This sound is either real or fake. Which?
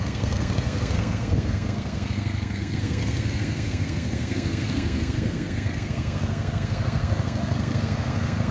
fake